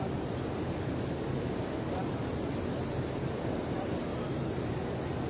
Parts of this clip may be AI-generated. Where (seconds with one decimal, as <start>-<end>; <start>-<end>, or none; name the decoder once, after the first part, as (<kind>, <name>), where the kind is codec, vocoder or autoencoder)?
none